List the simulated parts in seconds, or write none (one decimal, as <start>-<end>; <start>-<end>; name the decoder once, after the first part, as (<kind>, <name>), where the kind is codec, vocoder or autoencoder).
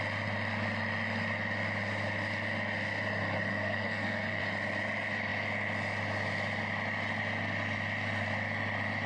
3.5-4.4 (codec, SNAC)